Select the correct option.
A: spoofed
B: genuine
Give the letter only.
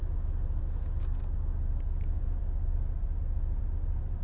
B